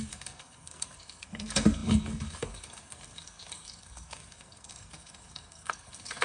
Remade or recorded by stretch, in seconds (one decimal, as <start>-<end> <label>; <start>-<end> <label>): 0.0-6.2 remade